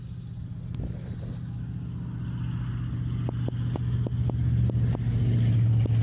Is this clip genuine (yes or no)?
yes